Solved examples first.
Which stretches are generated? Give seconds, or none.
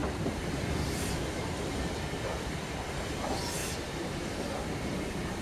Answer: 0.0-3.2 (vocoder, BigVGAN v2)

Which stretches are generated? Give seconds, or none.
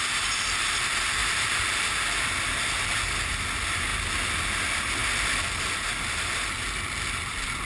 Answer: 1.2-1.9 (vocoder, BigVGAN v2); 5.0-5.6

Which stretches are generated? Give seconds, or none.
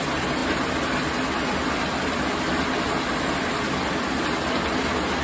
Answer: none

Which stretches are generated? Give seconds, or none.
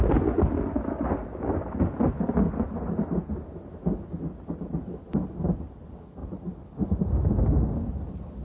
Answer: 6.2-7.3 (vocoder, BigVGAN v2)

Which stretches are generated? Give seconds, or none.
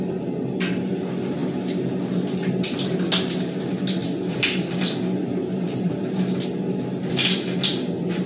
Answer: 4.0-4.6 (vocoder, BigVGAN v2); 5.2-5.9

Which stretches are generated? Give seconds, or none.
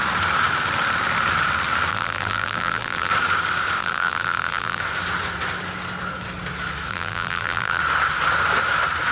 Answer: 1.9-3.1 (vocoder, BigVGAN v2); 3.8-4.8; 6.9-7.8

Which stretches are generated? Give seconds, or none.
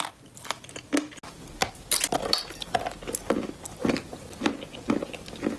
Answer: 3.8-4.6 (vocoder, BigVGAN v2)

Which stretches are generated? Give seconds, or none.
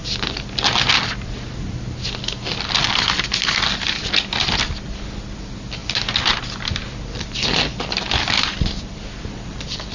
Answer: 5.8-7.1 (vocoder, BigVGAN v2)